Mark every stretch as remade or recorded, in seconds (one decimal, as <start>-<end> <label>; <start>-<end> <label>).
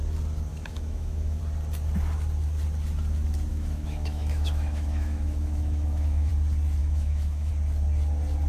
0.0-0.5 recorded; 0.5-1.4 remade; 1.4-3.5 recorded; 3.5-6.3 remade; 6.3-6.8 recorded; 6.8-7.5 remade; 7.5-8.5 recorded